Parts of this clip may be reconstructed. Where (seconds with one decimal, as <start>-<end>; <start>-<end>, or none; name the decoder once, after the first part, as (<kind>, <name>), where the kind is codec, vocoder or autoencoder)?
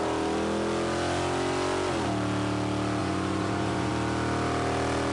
3.0-3.9 (vocoder, Vocos)